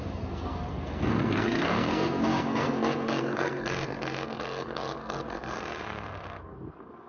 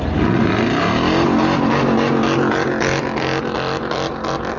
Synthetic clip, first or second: first